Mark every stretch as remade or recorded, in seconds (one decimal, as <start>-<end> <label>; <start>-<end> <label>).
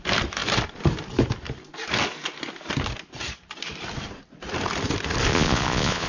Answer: 0.0-5.3 recorded; 5.3-6.1 remade